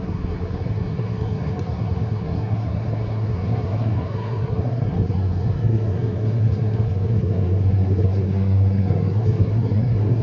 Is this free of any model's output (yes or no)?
no